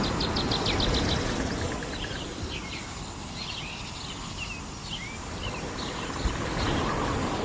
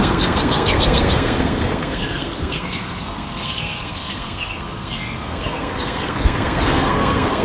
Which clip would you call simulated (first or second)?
second